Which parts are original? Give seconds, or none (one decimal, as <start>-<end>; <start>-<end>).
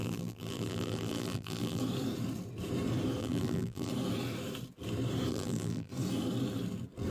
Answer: 1.8-3.2; 3.9-5.3; 5.9-7.1